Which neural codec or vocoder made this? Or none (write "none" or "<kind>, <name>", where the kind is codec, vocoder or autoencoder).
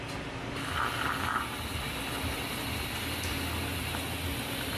none